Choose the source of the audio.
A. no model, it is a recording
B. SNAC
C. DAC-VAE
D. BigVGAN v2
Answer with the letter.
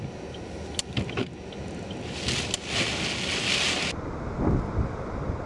A